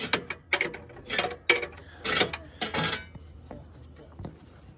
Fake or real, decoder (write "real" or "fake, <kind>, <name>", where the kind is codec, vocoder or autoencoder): real